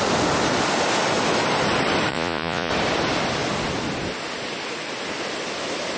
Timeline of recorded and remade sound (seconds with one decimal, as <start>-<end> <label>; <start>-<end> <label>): 0.0-2.1 recorded; 2.1-2.7 remade; 2.7-6.0 recorded

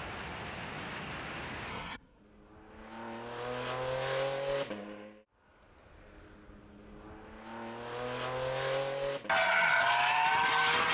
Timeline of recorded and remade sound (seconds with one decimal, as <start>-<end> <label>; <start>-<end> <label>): 0.0-1.7 recorded; 1.7-2.2 remade; 2.2-10.9 recorded

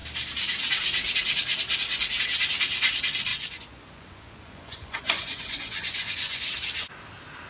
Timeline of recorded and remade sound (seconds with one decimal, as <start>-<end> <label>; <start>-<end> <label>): 0.0-3.3 recorded; 3.3-6.5 remade; 6.5-7.5 recorded

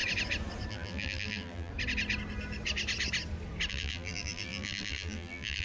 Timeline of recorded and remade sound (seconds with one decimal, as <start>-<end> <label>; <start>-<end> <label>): 0.0-0.7 recorded; 0.7-1.7 remade; 1.7-3.7 recorded; 3.7-5.6 remade

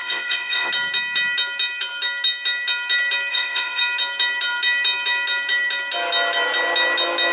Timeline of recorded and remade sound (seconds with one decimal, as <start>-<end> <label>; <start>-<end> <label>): 0.0-0.7 remade; 0.7-3.3 recorded; 3.3-3.8 remade; 3.8-7.3 recorded